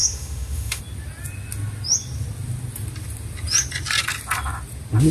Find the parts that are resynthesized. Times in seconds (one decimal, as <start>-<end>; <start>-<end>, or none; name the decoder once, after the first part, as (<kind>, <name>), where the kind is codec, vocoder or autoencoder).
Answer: 0.0-0.8 (autoencoder, DAC-VAE)